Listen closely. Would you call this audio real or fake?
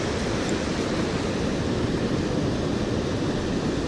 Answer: real